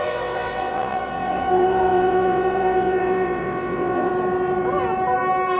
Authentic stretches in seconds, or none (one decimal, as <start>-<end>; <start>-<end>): 4.1-5.6